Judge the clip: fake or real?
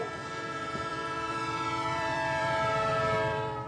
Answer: fake